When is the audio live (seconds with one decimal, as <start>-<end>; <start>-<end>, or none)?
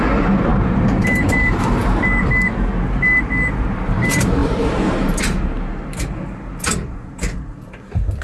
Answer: 0.0-0.5; 1.6-4.4; 5.2-8.2